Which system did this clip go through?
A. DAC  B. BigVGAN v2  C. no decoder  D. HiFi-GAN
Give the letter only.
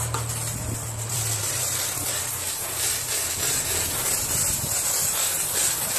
B